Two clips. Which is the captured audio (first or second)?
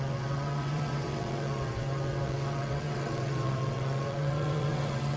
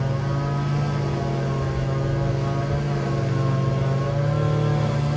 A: second